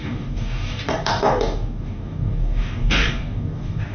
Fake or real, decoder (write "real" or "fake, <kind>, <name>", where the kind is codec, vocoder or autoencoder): fake, codec, DAC